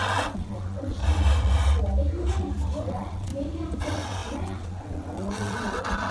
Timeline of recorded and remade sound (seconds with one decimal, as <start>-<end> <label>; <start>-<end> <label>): 0.0-1.0 remade; 1.0-2.8 recorded; 2.8-3.3 remade; 3.3-3.8 recorded; 3.8-6.1 remade